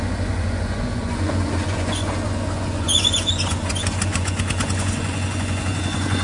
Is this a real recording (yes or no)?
no